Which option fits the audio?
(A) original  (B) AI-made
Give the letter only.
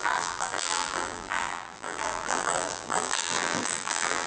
B